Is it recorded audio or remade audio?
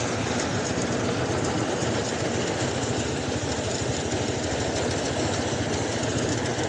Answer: recorded